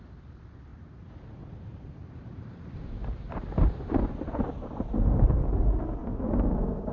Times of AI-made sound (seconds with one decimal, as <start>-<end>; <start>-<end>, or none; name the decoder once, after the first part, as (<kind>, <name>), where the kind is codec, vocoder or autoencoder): 0.7-4.8 (vocoder, BigVGAN v2)